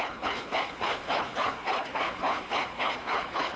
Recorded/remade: remade